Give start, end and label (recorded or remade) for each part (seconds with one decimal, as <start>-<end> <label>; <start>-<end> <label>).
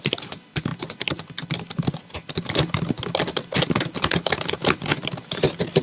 0.0-5.8 recorded